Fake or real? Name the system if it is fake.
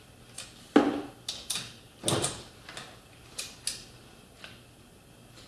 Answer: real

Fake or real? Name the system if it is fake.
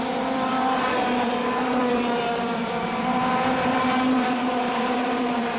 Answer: fake, vocoder, BigVGAN v2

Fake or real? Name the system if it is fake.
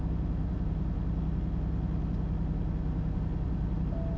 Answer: real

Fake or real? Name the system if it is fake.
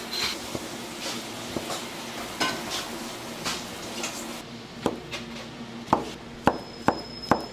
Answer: real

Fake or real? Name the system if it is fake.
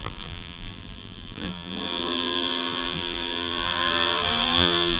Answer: fake, vocoder, BigVGAN v2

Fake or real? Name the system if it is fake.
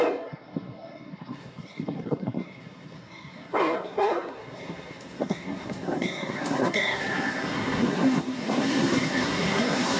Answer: fake, codec, SNAC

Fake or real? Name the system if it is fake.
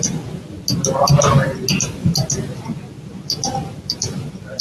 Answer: real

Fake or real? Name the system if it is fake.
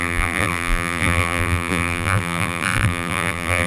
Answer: fake, vocoder, BigVGAN v2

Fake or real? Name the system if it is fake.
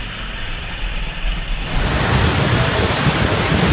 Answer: real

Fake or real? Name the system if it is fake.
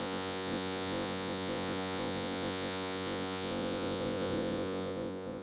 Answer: fake, vocoder, Vocos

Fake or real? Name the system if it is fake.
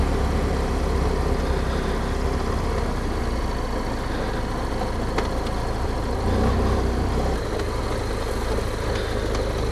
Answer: real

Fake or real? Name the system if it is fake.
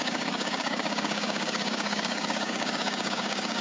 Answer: fake, codec, DAC